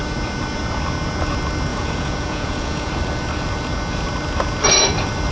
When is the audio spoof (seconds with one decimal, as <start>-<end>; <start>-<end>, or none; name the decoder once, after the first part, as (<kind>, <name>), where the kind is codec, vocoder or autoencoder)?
1.7-2.9 (vocoder, Vocos)